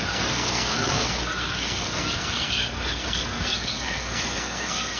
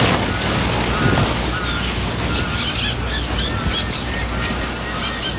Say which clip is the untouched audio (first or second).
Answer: second